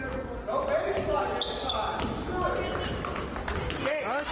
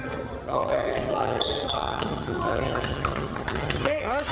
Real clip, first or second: first